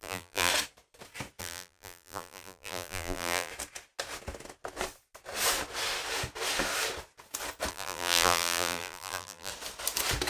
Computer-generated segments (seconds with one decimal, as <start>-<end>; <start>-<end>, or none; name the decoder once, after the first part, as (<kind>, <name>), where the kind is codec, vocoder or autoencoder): 0.0-0.5 (vocoder, BigVGAN v2); 1.4-3.5; 7.7-9.5